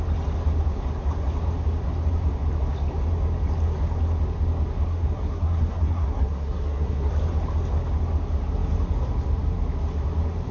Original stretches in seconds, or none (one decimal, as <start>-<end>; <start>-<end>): 0.0-4.9; 7.1-10.5